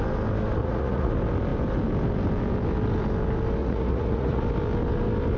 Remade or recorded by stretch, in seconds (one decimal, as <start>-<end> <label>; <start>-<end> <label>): 0.0-0.6 recorded; 0.6-1.1 remade; 1.1-3.6 recorded; 3.6-4.4 remade; 4.4-5.4 recorded